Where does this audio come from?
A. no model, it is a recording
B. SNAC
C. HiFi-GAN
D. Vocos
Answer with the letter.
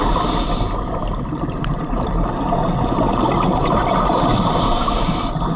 A